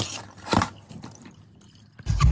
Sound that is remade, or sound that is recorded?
recorded